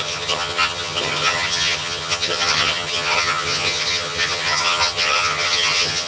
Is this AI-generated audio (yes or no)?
yes